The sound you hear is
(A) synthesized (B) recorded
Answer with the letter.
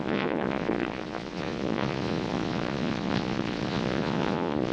A